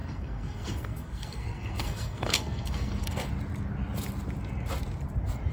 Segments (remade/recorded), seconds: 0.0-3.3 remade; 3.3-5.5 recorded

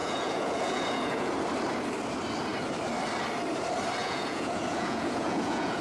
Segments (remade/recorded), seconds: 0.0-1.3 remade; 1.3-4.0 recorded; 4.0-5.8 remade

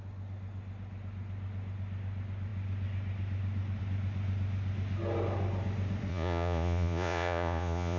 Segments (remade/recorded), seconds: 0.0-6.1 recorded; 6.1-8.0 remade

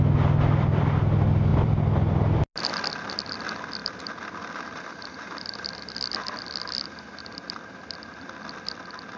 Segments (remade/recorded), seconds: 0.0-1.5 recorded; 1.5-2.4 remade; 2.4-9.2 recorded

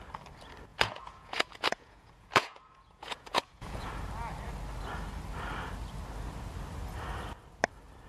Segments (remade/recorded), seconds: 0.0-0.7 recorded; 0.7-3.9 remade; 3.9-8.1 recorded

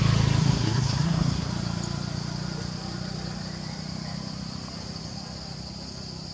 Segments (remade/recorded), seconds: 0.0-0.4 recorded; 0.4-1.5 remade; 1.5-6.3 recorded

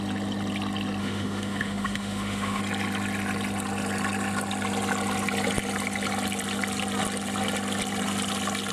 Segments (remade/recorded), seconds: 0.0-1.0 recorded; 1.0-2.6 remade; 2.6-8.7 recorded

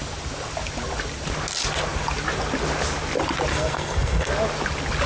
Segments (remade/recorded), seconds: 0.0-3.5 recorded; 3.5-4.3 remade; 4.3-5.1 recorded